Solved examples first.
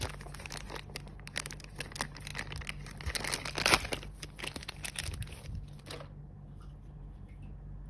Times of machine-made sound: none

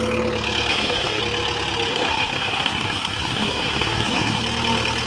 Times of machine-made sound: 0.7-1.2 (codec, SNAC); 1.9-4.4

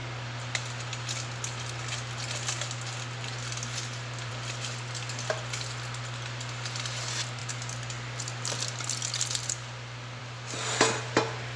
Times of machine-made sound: none